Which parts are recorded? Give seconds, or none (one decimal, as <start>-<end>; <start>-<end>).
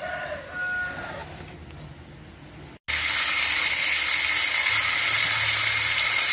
0.0-6.3